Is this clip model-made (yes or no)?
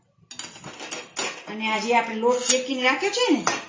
no